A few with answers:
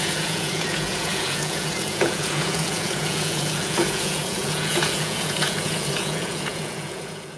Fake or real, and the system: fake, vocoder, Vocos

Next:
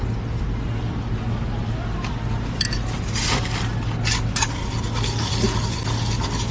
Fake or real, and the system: real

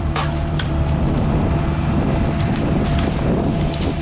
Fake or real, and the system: fake, vocoder, BigVGAN v2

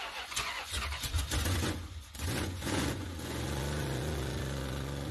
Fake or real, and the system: fake, vocoder, Vocos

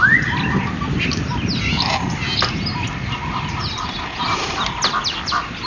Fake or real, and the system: real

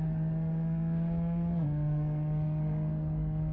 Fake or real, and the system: fake, codec, SNAC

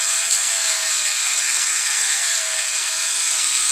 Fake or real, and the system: fake, codec, SNAC